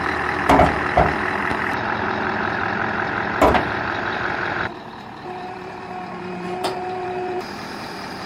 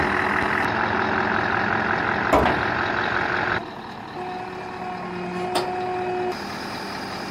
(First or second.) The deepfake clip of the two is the first